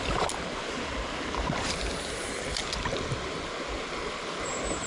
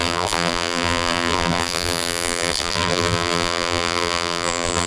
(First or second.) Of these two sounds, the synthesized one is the second